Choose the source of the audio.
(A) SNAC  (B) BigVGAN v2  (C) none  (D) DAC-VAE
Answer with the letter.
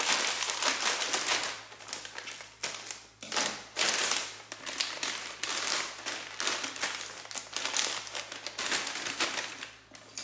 C